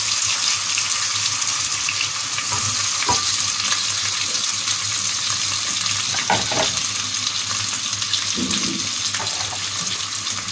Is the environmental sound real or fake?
real